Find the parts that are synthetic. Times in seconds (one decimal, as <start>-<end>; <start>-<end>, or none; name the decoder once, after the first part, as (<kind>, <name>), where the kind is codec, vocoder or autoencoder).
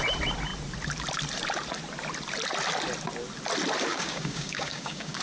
3.9-5.2 (codec, DAC)